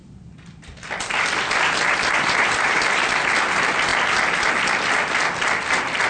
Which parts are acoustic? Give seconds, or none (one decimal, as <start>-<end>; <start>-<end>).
2.3-6.1